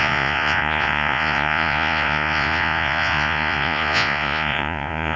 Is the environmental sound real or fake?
fake